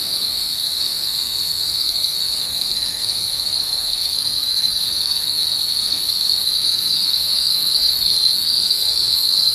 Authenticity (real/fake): fake